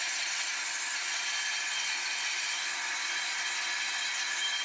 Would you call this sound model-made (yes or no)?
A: no